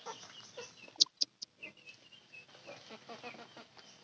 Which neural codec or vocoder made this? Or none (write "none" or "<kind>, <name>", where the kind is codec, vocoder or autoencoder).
none